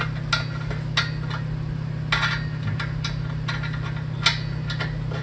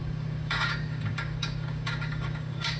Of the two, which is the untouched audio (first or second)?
first